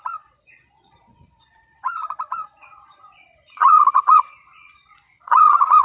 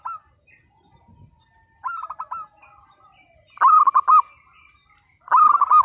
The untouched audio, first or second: second